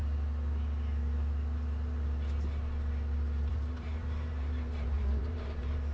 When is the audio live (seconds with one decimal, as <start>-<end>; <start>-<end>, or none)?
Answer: 0.0-3.5